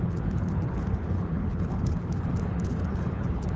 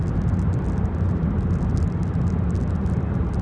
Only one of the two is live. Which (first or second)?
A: second